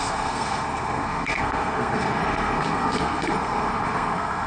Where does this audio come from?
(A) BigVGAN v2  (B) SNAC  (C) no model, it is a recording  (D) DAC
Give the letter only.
B